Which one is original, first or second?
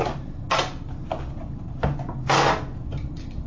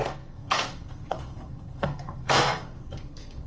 first